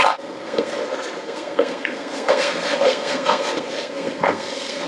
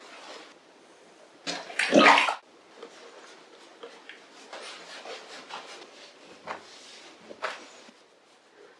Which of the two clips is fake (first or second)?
first